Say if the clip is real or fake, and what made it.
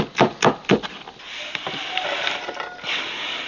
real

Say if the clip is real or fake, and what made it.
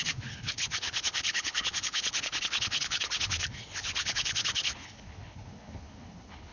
fake, codec, HILCodec